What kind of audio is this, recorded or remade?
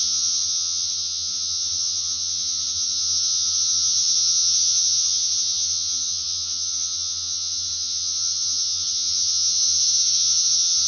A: remade